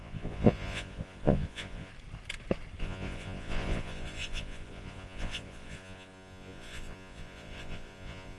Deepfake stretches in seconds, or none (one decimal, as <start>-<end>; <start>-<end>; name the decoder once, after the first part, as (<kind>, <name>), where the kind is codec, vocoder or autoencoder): 0.0-1.9 (vocoder, Vocos); 2.8-8.4